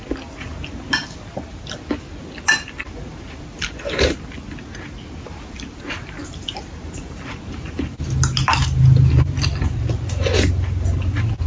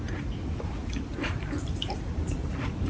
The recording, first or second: first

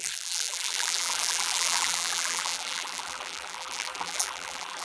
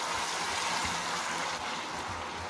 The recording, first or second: second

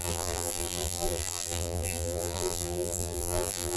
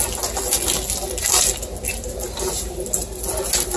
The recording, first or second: second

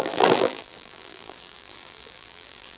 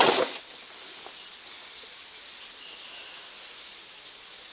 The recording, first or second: second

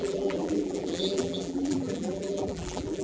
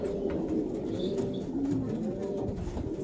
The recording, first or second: second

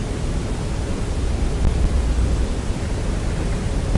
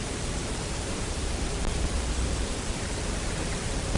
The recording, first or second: first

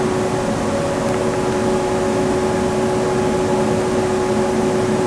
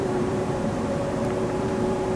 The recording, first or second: first